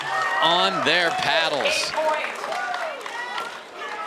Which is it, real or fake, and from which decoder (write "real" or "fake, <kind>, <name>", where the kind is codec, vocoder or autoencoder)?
real